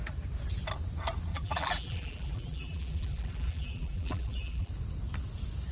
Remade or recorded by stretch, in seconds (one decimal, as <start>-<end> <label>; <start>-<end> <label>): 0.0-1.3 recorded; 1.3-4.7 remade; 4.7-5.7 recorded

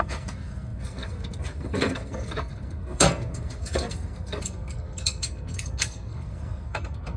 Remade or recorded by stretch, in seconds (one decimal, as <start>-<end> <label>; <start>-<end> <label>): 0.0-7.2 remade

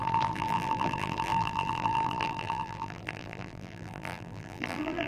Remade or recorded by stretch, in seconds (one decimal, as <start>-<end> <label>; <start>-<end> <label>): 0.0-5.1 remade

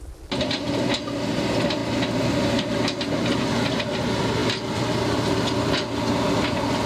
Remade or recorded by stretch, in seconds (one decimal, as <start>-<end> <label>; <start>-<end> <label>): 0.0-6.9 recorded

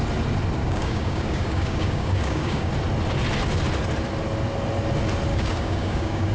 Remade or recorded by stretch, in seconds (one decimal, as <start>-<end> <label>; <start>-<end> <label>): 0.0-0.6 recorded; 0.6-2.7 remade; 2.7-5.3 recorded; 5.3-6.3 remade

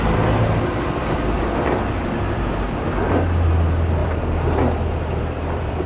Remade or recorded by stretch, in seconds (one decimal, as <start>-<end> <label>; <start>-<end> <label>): 0.0-4.0 recorded; 4.0-5.9 remade

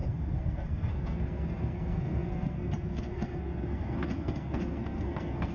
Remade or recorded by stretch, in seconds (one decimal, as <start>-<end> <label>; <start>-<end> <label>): 0.0-5.5 remade